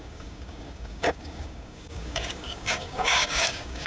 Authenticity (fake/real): fake